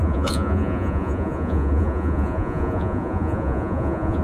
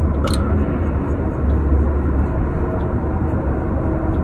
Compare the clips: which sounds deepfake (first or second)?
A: first